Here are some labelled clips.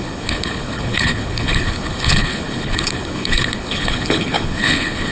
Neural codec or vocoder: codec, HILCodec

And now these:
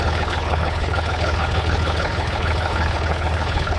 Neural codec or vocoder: codec, HILCodec